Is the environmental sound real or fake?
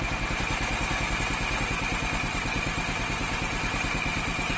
real